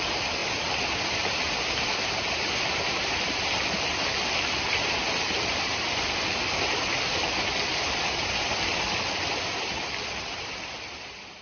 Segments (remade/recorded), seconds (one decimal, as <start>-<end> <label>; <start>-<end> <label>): 0.0-0.4 recorded; 0.4-3.1 remade; 3.1-11.4 recorded